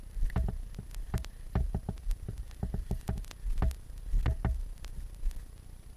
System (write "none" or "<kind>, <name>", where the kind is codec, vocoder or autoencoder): none